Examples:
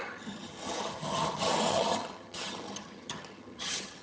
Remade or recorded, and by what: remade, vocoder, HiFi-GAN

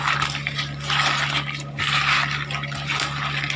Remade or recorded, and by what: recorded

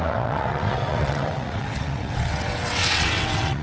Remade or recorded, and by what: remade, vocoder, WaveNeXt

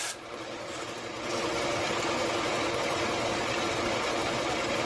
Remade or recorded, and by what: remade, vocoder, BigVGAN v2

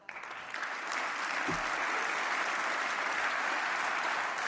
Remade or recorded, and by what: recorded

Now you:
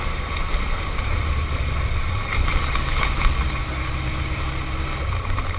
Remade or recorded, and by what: recorded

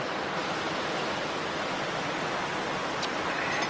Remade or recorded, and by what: recorded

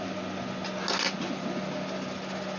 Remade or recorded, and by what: recorded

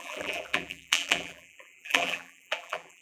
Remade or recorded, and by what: remade, vocoder, BigVGAN v2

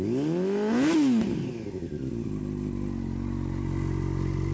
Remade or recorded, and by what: recorded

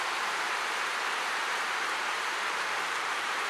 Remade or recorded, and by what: remade, vocoder, BigVGAN v2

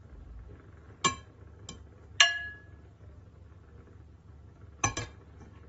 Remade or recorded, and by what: recorded